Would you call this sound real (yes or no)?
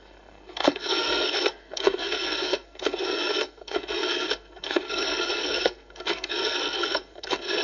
no